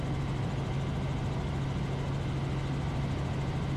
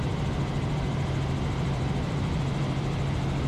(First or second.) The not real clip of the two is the second